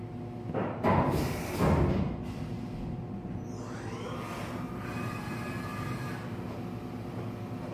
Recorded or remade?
recorded